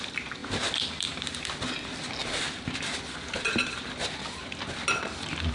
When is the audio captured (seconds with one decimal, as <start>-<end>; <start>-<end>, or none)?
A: 0.0-0.4; 0.9-5.5